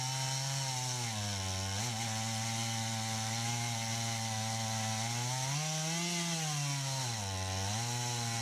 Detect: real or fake real